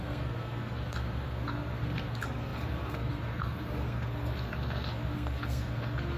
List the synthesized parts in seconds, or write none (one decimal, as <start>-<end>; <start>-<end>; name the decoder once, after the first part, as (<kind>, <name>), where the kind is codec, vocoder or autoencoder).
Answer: 0.0-6.2 (codec, SNAC)